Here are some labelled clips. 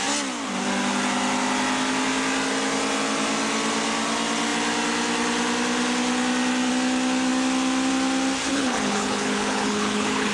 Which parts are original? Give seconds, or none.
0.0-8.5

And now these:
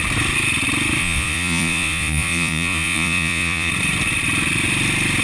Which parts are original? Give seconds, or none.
0.0-1.0; 3.7-5.2

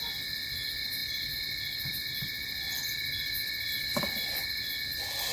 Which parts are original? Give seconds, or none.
0.0-5.3